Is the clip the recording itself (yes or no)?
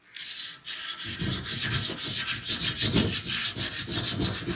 yes